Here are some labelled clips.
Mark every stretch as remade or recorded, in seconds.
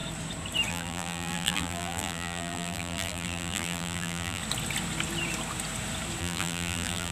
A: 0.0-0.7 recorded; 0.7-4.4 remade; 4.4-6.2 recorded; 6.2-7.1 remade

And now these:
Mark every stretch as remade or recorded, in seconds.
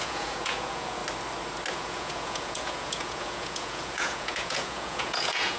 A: 0.0-1.0 remade; 1.0-1.7 recorded; 1.7-5.6 remade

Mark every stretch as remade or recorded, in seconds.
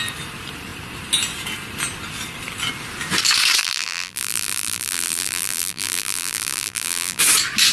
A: 0.0-3.6 recorded; 3.6-7.2 remade; 7.2-7.7 recorded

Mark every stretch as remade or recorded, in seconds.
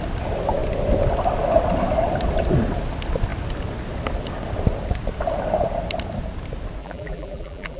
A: 0.0-6.8 recorded; 6.8-7.8 remade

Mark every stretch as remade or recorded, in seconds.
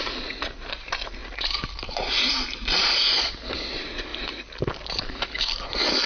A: 0.0-4.1 remade; 4.1-4.9 recorded; 4.9-6.1 remade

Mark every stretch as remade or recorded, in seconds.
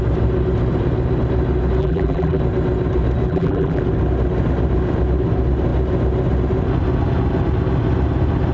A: 0.0-1.8 recorded; 1.8-2.4 remade; 2.4-3.3 recorded; 3.3-3.8 remade; 3.8-8.5 recorded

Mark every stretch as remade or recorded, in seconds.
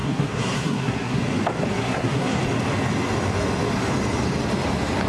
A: 0.0-1.2 remade; 1.2-1.7 recorded; 1.7-2.4 remade; 2.4-5.1 recorded